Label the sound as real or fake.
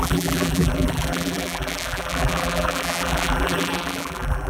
fake